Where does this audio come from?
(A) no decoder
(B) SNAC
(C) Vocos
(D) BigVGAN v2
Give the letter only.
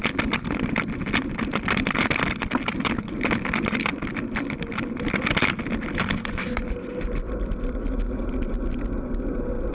A